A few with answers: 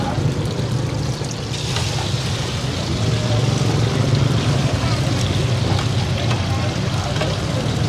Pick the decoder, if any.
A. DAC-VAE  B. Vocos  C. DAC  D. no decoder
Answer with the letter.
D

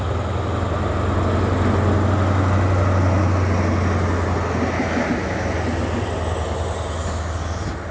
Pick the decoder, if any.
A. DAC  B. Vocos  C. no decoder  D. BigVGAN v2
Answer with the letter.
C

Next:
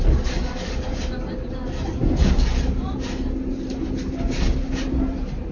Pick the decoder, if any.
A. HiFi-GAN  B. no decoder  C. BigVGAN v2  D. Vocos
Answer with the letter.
B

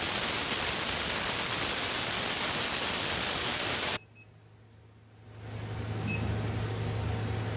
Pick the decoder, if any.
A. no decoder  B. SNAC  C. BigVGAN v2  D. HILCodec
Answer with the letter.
A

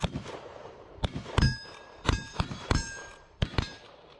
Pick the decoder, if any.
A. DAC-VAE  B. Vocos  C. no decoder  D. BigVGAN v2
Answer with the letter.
D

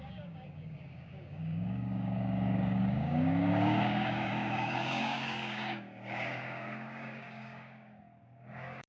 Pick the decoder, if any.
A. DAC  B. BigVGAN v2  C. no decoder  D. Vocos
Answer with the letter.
A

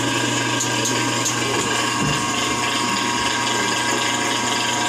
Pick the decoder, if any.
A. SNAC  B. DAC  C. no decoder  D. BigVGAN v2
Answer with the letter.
C